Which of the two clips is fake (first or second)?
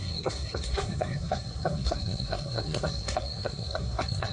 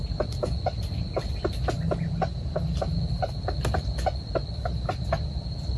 first